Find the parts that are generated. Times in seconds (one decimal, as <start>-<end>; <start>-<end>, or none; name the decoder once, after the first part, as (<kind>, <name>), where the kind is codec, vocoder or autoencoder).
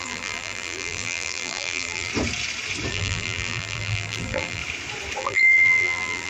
0.0-2.1 (vocoder, BigVGAN v2); 2.9-4.6; 5.2-6.3